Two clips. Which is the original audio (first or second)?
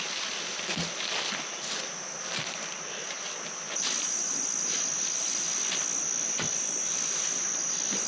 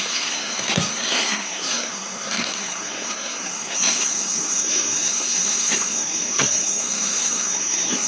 first